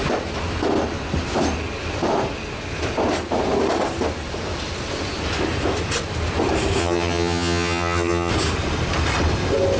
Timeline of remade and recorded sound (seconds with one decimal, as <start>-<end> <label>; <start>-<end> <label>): 0.0-6.8 recorded; 6.8-8.3 remade; 8.3-9.8 recorded